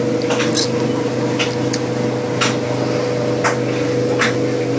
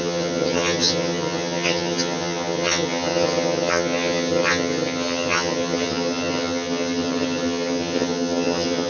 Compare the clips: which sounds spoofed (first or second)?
second